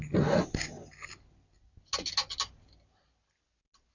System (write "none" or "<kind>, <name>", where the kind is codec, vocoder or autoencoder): none